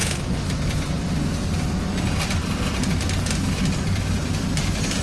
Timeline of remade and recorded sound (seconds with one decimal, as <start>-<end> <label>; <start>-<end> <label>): 0.0-0.6 remade; 0.6-5.0 recorded